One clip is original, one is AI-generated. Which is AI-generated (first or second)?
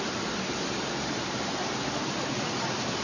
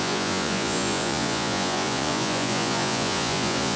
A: second